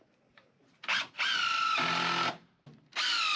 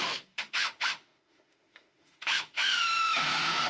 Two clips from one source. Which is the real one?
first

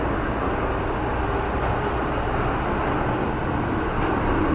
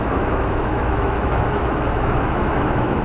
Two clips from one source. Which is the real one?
first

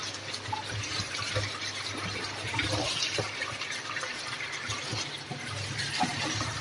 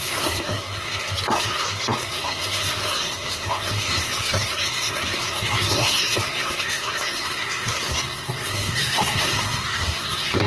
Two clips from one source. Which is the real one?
first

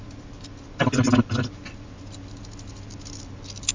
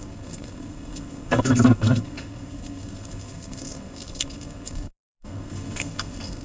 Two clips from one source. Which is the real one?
first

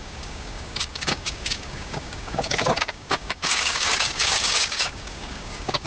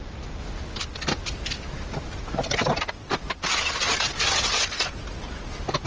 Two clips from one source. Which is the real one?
second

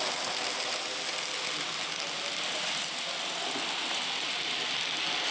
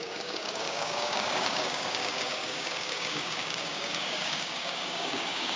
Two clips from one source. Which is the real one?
first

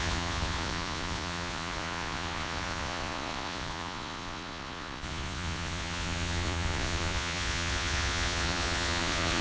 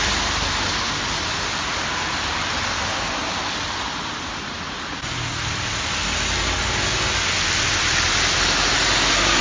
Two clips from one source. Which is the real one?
second